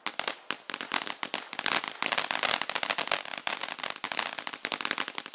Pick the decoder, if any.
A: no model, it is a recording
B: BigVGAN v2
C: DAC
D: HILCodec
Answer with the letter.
A